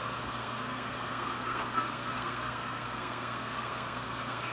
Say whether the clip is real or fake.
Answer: fake